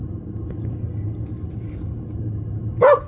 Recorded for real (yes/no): yes